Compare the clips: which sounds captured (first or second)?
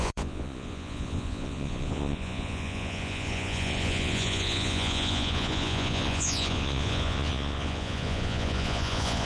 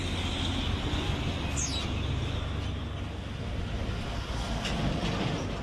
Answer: second